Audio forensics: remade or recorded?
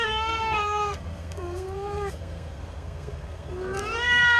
remade